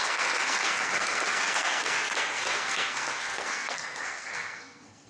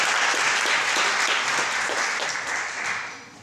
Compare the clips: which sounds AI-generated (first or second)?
first